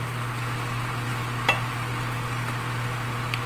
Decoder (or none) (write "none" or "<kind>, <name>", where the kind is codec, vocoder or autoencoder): none